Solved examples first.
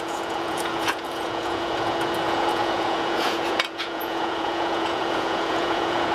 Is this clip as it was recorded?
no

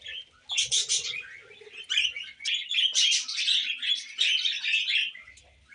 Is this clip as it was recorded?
yes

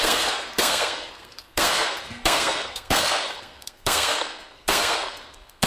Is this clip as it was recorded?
no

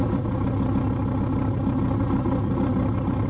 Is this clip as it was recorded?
yes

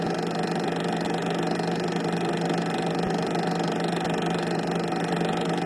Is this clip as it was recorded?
yes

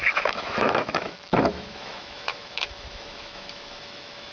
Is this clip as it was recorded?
no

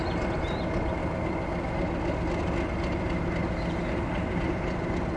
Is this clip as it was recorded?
yes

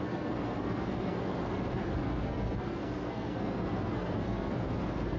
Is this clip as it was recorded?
no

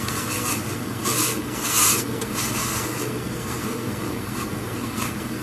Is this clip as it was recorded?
no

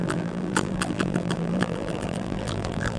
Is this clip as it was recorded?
no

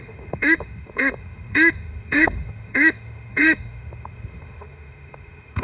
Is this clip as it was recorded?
no